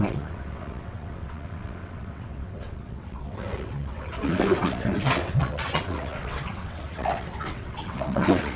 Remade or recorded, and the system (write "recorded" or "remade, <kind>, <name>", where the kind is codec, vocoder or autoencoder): remade, vocoder, WaveNeXt